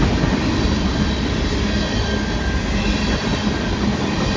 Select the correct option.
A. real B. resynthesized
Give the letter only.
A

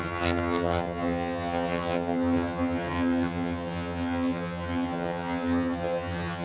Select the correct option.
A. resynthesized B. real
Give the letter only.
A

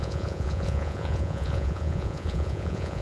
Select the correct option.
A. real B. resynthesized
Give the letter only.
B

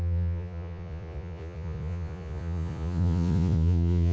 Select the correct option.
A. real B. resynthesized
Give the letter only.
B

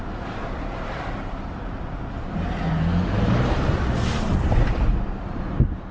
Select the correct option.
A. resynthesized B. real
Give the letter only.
B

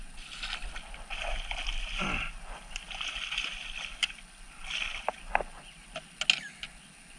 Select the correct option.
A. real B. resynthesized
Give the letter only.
A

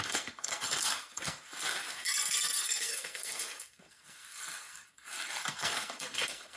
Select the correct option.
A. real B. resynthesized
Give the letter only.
B